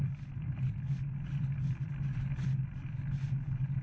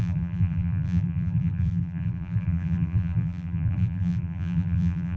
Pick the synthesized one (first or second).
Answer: second